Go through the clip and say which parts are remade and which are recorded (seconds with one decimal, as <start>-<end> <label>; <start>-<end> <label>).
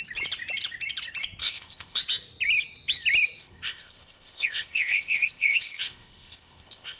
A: 0.0-1.4 recorded; 1.4-2.0 remade; 2.0-3.4 recorded; 3.4-7.0 remade